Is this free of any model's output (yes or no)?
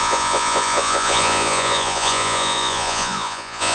no